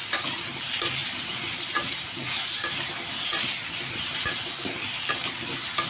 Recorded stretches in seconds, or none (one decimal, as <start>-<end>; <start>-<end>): 0.0-1.0; 4.5-5.9